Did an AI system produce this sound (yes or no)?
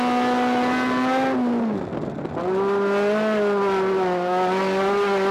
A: no